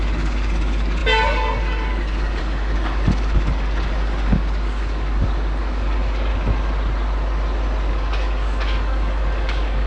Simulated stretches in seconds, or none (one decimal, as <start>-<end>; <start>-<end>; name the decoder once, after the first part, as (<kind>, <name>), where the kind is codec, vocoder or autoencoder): 0.0-6.3 (codec, DAC); 7.9-9.9